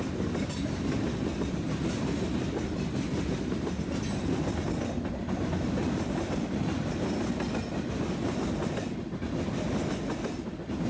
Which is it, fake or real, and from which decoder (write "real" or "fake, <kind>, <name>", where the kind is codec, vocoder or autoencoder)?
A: real